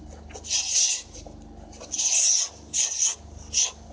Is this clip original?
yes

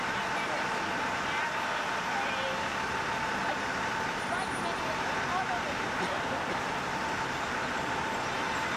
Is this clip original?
yes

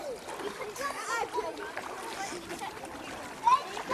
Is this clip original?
yes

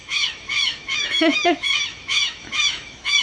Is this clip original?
no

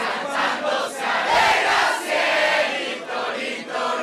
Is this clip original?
yes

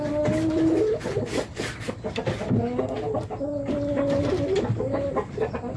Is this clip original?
yes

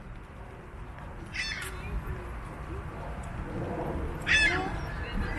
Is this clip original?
yes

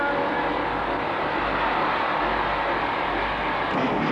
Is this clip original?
yes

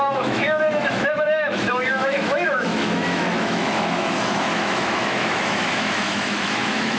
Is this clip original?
no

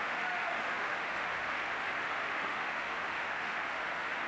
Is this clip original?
no